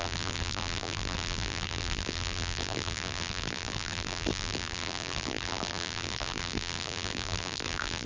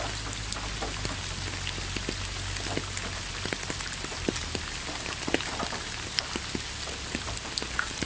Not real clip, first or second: first